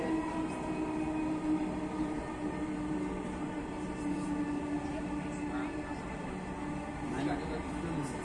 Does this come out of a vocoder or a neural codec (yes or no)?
no